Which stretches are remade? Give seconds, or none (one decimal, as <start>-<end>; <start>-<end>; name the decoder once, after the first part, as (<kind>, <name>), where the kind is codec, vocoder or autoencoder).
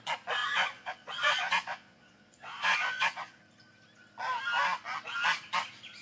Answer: 0.4-3.4 (vocoder, Vocos)